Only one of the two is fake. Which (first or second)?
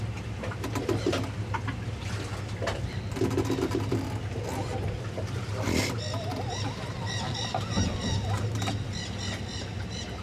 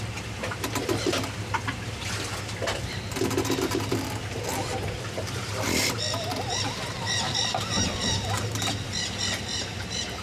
second